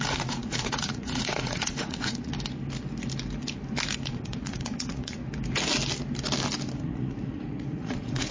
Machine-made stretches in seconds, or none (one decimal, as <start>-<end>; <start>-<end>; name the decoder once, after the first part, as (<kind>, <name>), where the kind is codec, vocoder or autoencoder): 0.0-2.3 (vocoder, Vocos); 4.1-5.2; 6.8-8.3